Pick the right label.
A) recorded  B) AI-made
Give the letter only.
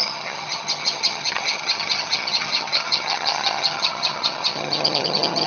B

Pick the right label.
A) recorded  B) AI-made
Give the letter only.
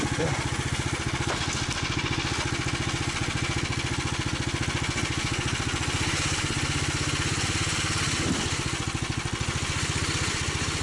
A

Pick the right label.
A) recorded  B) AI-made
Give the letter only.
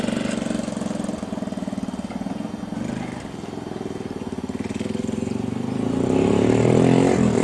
A